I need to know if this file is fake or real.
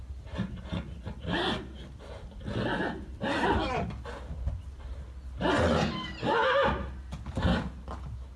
real